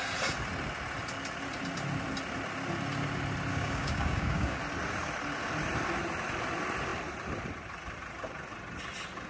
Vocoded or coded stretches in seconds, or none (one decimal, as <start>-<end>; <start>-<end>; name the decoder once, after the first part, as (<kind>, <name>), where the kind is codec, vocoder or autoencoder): 3.5-4.6 (codec, DAC)